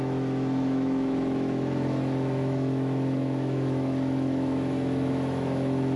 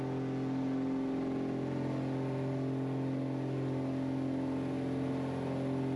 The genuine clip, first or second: second